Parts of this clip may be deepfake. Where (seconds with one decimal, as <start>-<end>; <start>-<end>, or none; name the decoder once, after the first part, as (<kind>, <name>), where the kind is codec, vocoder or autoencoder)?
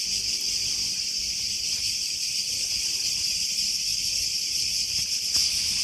3.9-5.1 (vocoder, BigVGAN v2)